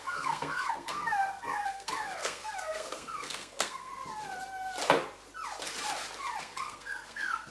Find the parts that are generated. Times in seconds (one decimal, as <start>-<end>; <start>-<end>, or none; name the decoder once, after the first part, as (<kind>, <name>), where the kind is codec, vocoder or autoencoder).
0.0-3.9 (codec, SNAC); 6.4-7.5